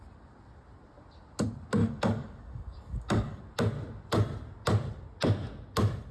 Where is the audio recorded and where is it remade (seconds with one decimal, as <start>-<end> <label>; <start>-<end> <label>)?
0.0-1.8 recorded; 1.8-3.4 remade; 3.4-6.1 recorded